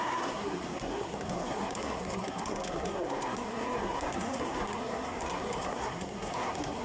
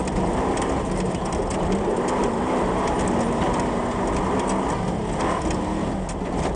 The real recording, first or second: second